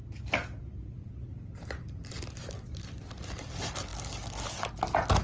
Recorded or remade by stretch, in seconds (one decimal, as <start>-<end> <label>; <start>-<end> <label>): 0.0-5.2 recorded